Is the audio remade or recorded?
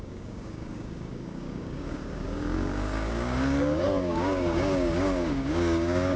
remade